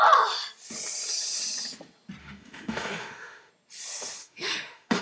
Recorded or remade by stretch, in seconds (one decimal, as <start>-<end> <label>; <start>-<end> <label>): 0.0-2.2 recorded; 2.2-3.5 remade; 3.5-4.2 recorded; 4.2-5.0 remade